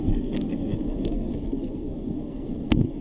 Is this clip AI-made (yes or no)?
yes